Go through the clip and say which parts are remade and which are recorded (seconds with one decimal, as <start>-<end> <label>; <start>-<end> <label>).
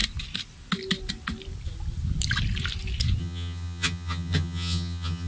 0.0-3.2 recorded; 3.2-5.3 remade